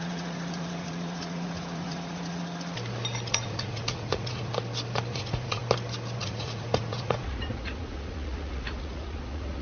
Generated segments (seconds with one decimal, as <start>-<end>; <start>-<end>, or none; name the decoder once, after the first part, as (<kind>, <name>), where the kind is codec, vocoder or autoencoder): 0.0-2.4 (vocoder, Vocos); 3.3-4.5; 5.1-5.6; 6.2-9.6